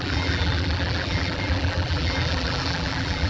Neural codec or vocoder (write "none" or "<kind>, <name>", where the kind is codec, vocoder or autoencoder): vocoder, BigVGAN v2